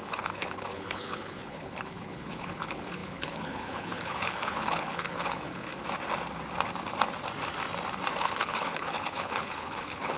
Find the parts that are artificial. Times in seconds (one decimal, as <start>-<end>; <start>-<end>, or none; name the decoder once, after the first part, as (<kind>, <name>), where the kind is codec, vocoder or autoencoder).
0.0-5.7 (codec, HILCodec); 8.2-10.2